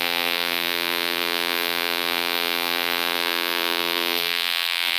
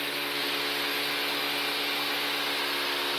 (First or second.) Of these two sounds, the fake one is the first